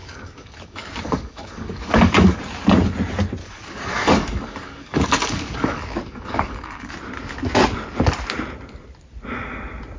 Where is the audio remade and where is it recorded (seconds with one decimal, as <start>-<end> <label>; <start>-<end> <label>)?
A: 0.0-2.4 remade; 2.4-3.4 recorded; 3.4-6.9 remade; 6.9-10.0 recorded